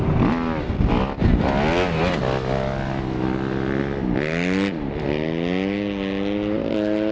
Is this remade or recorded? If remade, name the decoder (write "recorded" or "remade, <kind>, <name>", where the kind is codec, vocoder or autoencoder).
recorded